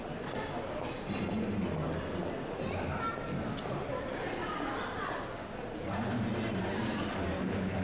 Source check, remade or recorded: recorded